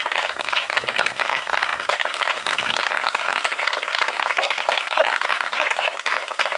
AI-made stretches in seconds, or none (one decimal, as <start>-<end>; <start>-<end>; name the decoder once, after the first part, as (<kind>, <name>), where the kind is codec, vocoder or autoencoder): 0.0-6.6 (codec, SNAC)